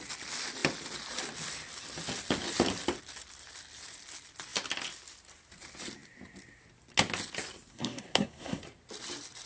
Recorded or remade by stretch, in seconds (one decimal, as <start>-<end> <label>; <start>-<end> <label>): 0.0-7.7 recorded; 7.7-8.6 remade; 8.6-9.5 recorded